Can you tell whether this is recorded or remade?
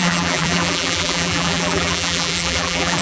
remade